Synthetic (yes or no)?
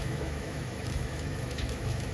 yes